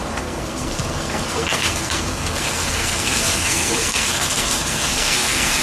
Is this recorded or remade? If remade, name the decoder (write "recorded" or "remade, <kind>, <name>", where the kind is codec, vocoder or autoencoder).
remade, codec, SNAC